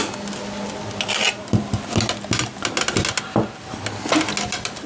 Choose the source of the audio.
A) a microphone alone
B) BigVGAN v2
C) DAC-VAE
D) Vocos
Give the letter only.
A